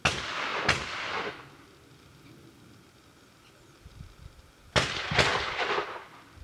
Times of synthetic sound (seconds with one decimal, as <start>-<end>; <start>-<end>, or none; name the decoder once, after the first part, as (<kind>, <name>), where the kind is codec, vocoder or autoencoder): none